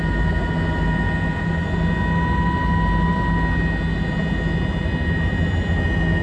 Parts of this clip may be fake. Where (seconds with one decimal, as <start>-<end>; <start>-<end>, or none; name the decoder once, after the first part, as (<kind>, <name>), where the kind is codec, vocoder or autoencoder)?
none